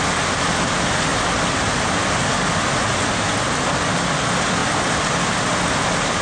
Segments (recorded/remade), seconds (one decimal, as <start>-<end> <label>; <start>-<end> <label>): 0.0-6.2 recorded